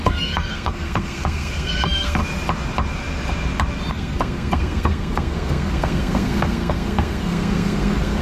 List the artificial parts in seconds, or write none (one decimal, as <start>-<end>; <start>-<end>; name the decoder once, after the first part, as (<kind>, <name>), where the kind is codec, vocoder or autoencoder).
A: 0.0-2.2 (codec, SNAC); 3.9-8.2